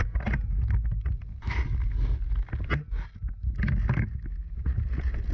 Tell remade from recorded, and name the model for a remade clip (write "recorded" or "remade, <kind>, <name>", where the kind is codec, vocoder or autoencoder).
recorded